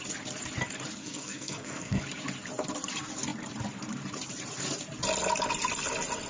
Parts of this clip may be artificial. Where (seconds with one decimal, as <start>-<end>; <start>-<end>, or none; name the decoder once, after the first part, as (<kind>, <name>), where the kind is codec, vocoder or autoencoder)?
1.0-2.0 (codec, SNAC)